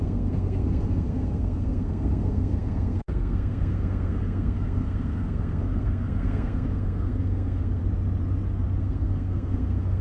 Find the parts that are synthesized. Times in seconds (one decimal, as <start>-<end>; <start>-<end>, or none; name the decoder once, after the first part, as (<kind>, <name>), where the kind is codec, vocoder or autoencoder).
0.0-7.8 (codec, SNAC); 8.8-10.0